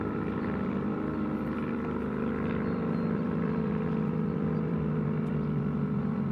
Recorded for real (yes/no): no